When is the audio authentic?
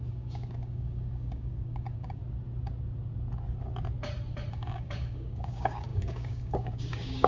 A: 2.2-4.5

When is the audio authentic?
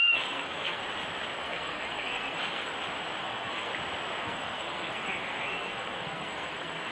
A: 0.8-1.4; 2.7-3.2; 3.7-4.2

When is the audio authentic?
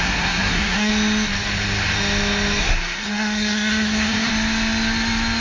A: 0.9-2.6; 4.3-5.4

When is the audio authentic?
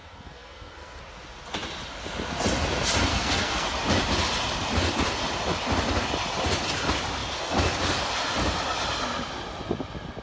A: 1.0-3.1; 3.7-10.2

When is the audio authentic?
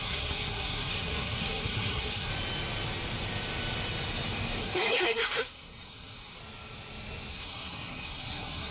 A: 2.3-4.6; 6.4-7.3